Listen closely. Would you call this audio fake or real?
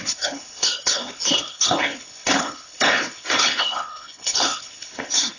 fake